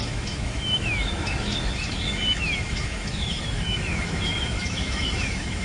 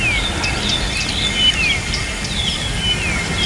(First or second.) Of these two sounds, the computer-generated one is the first